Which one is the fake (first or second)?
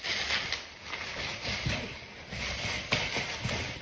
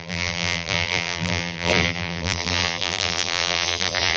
second